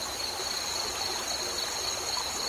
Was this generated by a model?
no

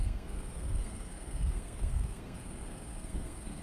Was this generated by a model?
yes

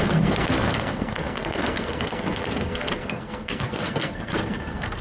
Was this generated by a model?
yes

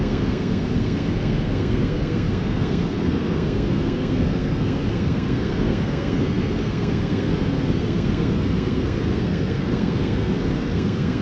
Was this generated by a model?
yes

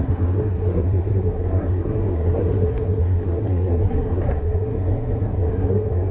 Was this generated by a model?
yes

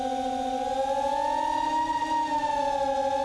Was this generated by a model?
no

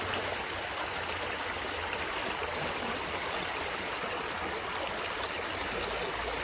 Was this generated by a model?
no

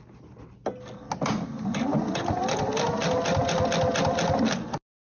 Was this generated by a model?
no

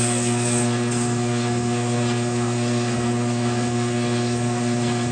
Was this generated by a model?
yes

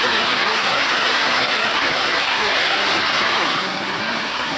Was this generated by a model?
yes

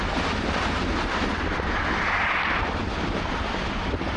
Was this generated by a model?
no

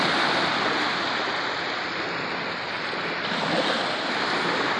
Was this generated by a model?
no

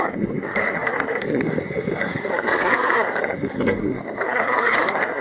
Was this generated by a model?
yes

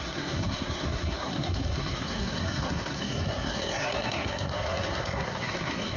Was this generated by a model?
yes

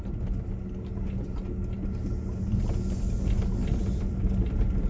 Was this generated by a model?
no